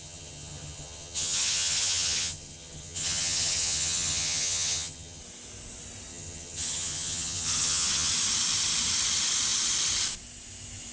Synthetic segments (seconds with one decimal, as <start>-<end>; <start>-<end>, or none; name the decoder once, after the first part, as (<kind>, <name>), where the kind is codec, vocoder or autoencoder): 0.0-5.2 (vocoder, HiFi-GAN); 6.1-8.1